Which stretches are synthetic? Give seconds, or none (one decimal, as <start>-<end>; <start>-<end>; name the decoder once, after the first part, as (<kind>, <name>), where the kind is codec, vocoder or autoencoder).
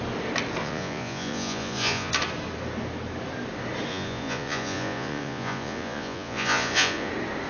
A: 0.6-2.1 (vocoder, Vocos); 3.9-7.1